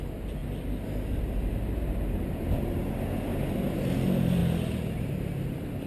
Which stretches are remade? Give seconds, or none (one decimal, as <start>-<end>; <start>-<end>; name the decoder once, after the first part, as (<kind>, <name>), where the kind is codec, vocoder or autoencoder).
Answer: none